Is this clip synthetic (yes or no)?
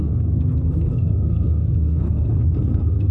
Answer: yes